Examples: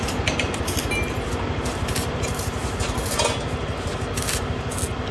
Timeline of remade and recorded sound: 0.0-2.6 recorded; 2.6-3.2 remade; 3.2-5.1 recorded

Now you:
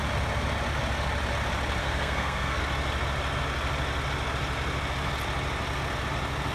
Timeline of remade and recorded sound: 0.0-1.8 recorded; 1.8-2.6 remade; 2.6-6.5 recorded

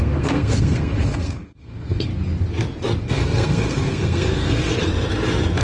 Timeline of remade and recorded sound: 0.0-2.1 remade; 2.1-3.0 recorded; 3.0-4.8 remade; 4.8-5.6 recorded

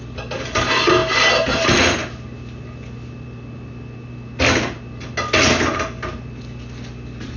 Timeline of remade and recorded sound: 0.0-7.4 recorded

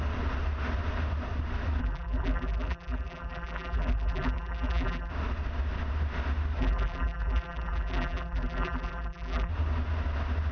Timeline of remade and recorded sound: 0.0-1.8 recorded; 1.8-5.1 remade; 5.1-6.6 recorded; 6.6-9.5 remade; 9.5-10.5 recorded

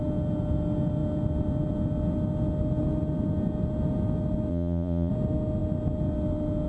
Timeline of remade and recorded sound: 0.0-4.5 recorded; 4.5-5.1 remade; 5.1-6.7 recorded

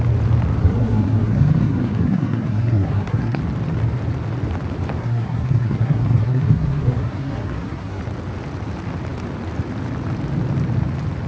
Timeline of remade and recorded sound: 0.0-0.6 recorded; 0.6-3.4 remade; 3.4-5.0 recorded; 5.0-8.0 remade; 8.0-11.3 recorded